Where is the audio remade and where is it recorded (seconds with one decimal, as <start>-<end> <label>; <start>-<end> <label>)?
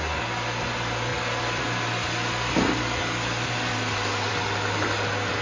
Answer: 0.0-5.4 recorded